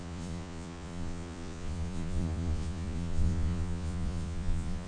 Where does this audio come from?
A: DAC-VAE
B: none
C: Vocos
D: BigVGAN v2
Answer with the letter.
C